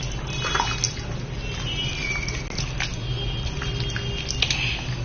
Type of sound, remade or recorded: recorded